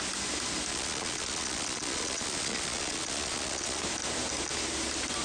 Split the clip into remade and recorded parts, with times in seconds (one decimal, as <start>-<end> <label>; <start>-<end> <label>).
0.0-0.7 recorded; 0.7-3.8 remade; 3.8-5.2 recorded